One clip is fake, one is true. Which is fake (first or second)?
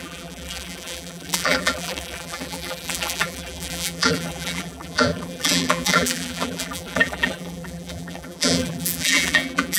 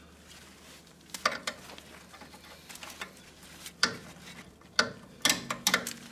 first